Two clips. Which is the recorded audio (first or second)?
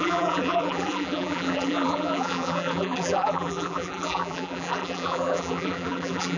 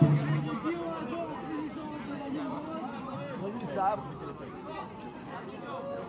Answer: second